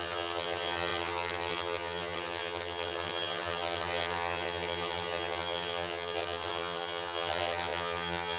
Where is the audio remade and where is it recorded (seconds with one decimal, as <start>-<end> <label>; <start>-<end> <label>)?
0.0-8.4 remade